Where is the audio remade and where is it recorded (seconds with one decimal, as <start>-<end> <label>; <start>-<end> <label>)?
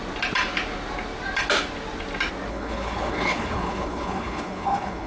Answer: 0.0-2.5 recorded; 2.5-5.1 remade